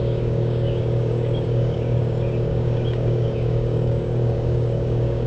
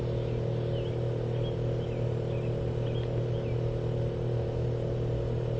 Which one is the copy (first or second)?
first